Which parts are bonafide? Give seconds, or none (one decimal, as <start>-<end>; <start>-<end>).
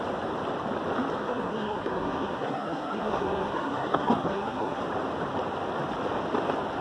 0.0-1.2; 4.8-6.8